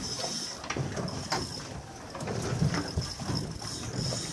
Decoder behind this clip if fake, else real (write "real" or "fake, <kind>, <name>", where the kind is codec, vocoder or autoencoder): real